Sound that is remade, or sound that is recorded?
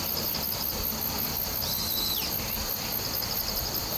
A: recorded